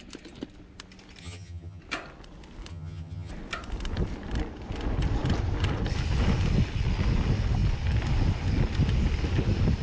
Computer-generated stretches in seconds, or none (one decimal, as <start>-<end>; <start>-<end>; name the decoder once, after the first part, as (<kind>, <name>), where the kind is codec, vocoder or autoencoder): 1.2-1.8 (vocoder, HiFi-GAN); 2.7-3.3